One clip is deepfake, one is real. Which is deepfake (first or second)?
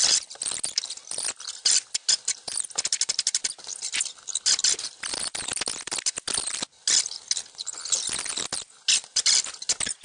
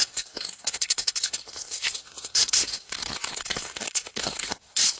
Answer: second